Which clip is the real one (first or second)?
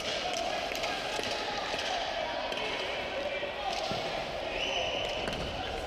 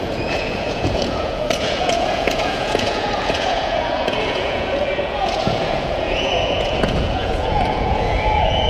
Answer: first